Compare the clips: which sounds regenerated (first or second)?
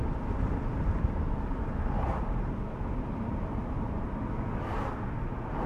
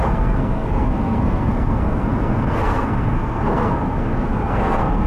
second